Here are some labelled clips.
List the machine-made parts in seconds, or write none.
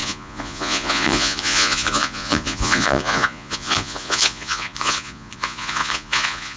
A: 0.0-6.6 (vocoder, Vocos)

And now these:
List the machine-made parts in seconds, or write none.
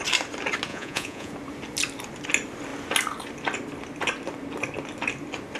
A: 0.7-1.3 (vocoder, Vocos)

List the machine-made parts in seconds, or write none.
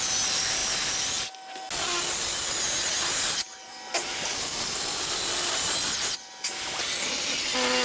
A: none